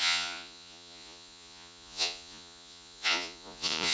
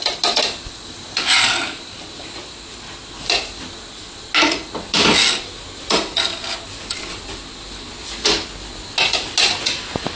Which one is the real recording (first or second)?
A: second